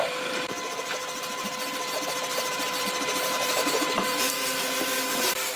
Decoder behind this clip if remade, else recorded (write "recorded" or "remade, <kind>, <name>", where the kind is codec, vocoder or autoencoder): remade, vocoder, BigVGAN v2